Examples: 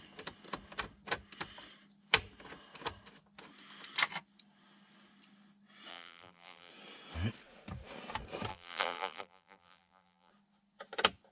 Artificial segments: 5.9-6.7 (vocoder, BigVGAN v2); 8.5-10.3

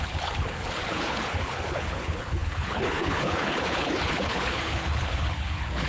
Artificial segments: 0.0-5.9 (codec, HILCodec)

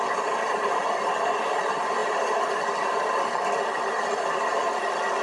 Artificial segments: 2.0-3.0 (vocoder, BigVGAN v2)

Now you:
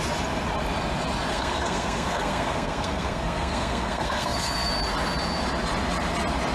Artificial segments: 1.3-4.7 (codec, SNAC)

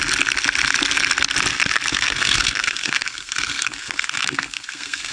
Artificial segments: 1.9-5.1 (codec, SNAC)

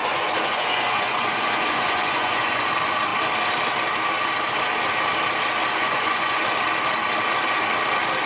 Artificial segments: 0.0-2.7 (vocoder, Vocos); 5.7-6.4

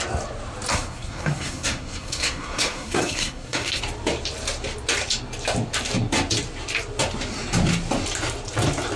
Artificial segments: 0.7-3.8 (codec, SNAC)